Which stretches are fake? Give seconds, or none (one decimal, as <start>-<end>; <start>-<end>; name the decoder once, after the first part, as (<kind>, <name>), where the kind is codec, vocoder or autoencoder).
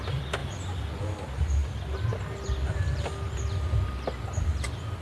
none